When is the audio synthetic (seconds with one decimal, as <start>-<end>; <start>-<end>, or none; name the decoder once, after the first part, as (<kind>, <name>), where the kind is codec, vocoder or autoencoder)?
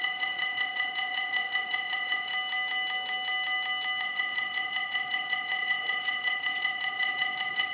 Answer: 0.0-2.3 (vocoder, WaveNeXt); 4.0-7.7